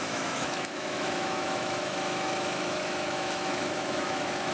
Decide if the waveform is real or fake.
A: fake